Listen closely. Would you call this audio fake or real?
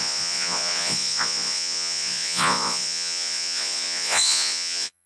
fake